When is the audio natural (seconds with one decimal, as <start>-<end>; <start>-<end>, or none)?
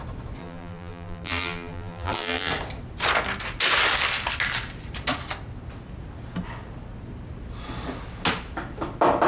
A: 0.0-0.4; 2.5-9.3